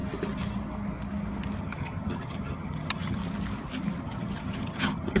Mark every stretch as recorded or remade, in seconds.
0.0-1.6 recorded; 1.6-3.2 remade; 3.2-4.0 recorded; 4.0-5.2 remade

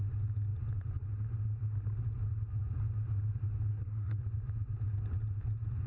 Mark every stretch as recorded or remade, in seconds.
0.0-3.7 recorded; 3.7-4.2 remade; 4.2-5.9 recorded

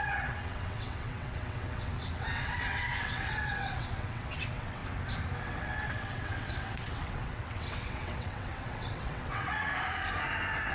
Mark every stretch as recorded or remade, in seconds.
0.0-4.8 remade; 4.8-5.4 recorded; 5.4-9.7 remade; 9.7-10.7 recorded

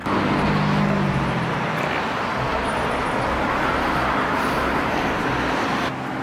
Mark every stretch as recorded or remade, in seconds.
0.0-1.5 recorded; 1.5-2.5 remade; 2.5-6.2 recorded